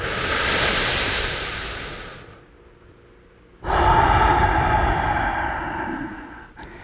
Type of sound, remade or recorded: recorded